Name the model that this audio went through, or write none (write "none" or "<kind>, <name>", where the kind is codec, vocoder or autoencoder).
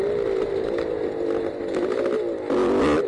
none